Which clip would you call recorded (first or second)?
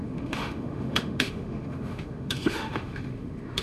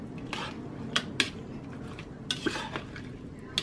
second